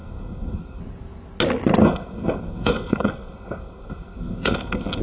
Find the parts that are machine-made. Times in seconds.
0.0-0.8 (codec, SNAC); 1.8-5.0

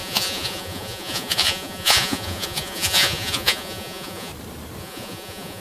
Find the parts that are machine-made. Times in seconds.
0.0-4.3 (vocoder, Vocos); 4.8-5.6

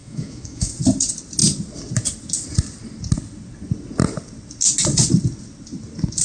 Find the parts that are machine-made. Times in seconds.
0.0-0.7 (autoencoder, DAC-VAE)

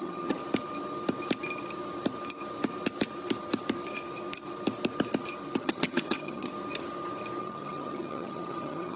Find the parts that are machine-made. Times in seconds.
0.0-0.4 (vocoder, HiFi-GAN); 5.6-6.5; 7.4-9.0

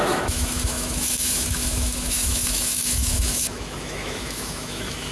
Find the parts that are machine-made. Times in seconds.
0.0-5.1 (autoencoder, DAC-VAE)

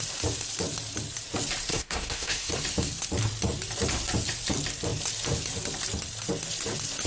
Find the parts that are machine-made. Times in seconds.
1.7-2.5 (codec, SNAC)